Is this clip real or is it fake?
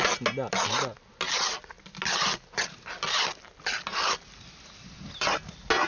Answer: real